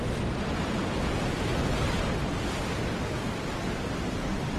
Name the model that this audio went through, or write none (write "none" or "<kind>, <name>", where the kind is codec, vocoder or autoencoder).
none